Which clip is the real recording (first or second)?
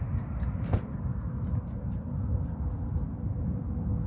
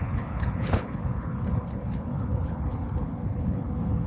first